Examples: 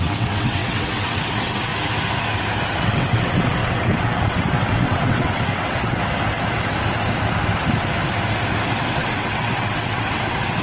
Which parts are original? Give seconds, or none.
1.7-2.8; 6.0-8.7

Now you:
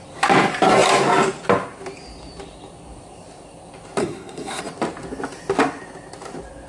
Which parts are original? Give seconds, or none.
0.0-4.0; 4.6-6.7